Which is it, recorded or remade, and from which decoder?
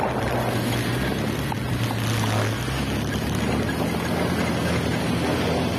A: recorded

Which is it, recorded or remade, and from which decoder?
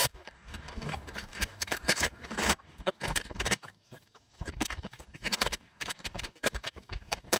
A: remade, codec, DAC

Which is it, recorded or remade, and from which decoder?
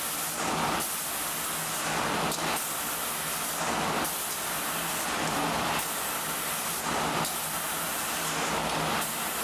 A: recorded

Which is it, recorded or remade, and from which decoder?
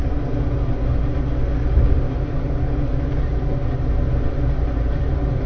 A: recorded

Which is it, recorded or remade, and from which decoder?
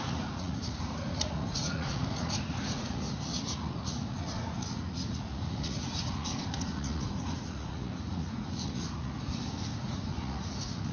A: remade, vocoder, Vocos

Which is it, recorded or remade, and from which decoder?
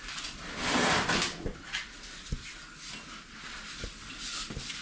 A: recorded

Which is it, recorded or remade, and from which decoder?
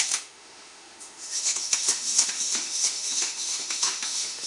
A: remade, autoencoder, DAC-VAE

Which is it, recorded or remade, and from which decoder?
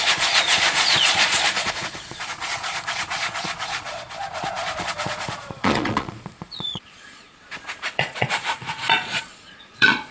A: remade, vocoder, Vocos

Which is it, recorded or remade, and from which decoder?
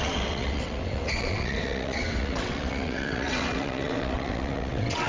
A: remade, vocoder, WaveNeXt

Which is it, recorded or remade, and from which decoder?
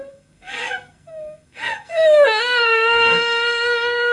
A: remade, codec, SNAC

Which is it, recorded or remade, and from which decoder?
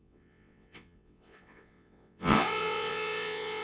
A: remade, vocoder, WaveNeXt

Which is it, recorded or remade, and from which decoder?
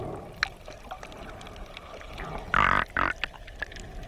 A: recorded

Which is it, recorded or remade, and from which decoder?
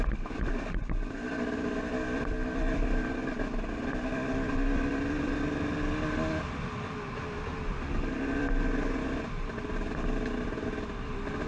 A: recorded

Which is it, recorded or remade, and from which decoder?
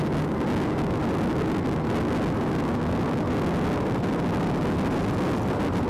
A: recorded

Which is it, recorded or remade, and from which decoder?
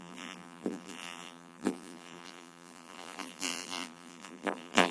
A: remade, vocoder, BigVGAN v2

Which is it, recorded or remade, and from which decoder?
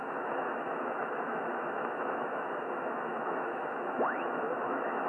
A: remade, autoencoder, DAC-VAE